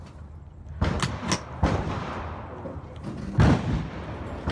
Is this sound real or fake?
real